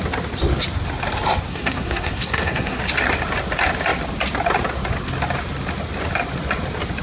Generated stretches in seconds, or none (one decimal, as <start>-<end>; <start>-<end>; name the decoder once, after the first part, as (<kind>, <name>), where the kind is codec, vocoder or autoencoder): 1.5-2.8 (codec, SNAC)